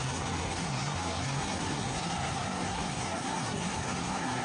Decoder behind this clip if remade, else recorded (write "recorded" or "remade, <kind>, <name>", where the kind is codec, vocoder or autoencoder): remade, codec, SNAC